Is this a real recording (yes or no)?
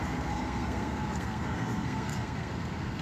no